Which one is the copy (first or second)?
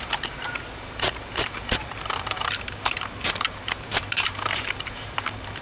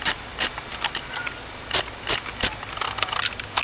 first